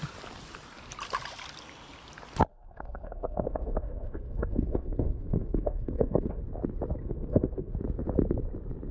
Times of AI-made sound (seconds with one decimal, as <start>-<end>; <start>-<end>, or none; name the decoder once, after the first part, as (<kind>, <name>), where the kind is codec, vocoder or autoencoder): 2.5-6.4 (codec, SNAC); 7.0-7.7